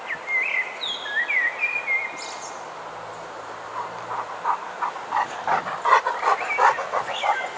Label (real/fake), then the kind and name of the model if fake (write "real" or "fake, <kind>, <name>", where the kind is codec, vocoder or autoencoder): real